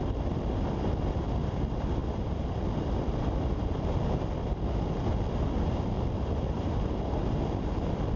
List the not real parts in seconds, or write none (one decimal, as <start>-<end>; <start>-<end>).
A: none